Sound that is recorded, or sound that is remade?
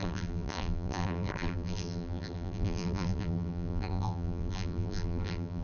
remade